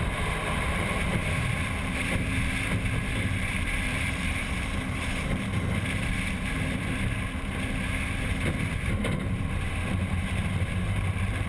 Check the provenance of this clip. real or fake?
fake